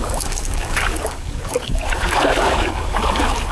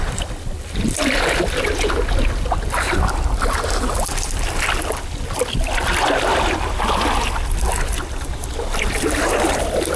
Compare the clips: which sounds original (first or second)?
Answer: second